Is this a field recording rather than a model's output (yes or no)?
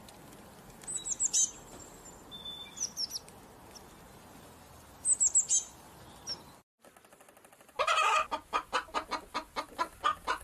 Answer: yes